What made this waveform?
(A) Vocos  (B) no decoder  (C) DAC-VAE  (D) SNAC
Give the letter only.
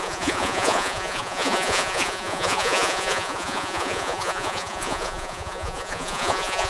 A